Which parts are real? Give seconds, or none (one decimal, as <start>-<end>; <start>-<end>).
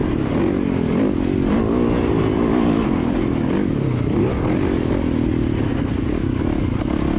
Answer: 0.0-7.2